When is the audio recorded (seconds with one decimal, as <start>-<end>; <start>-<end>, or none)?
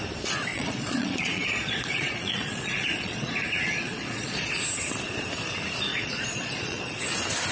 0.0-0.5; 4.5-5.9; 7.0-7.5